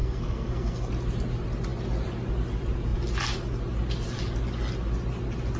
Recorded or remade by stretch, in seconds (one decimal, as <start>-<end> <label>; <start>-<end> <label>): 0.0-0.9 remade; 0.9-5.6 recorded